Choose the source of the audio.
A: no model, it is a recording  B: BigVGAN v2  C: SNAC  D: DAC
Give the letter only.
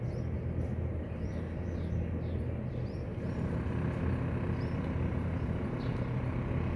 A